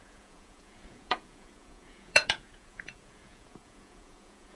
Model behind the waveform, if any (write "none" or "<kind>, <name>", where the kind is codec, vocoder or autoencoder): vocoder, Vocos